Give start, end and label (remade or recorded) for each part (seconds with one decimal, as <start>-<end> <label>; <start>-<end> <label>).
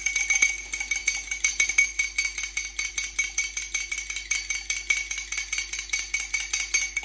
0.0-7.0 recorded